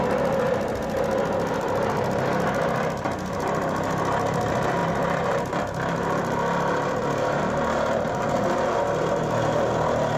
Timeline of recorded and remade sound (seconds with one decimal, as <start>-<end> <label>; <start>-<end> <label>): 0.0-10.2 recorded